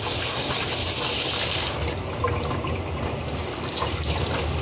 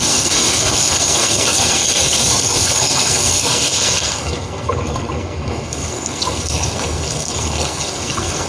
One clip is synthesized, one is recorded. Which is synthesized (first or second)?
second